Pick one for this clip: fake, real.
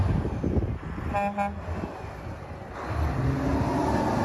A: real